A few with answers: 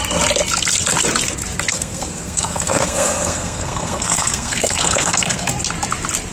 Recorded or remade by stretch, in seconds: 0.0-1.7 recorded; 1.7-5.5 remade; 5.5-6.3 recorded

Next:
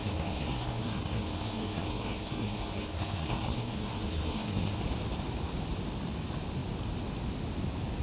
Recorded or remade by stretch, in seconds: 0.0-4.8 remade; 4.8-8.0 recorded

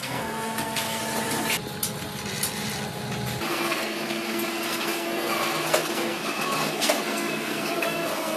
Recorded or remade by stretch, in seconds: 0.0-1.0 remade; 1.0-3.5 recorded; 3.5-8.4 remade

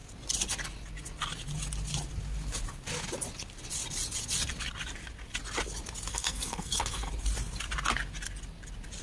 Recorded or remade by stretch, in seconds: 0.0-6.1 recorded; 6.1-7.1 remade; 7.1-9.0 recorded